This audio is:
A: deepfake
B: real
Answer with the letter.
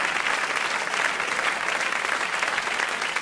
B